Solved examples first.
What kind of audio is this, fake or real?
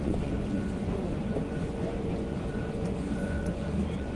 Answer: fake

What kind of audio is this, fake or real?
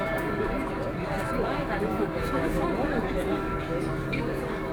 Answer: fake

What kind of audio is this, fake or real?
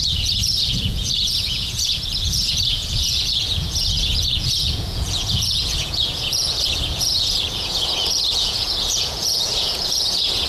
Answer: fake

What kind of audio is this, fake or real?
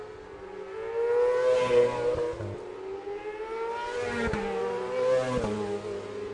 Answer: real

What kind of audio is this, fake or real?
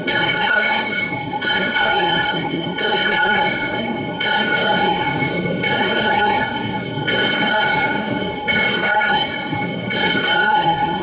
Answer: fake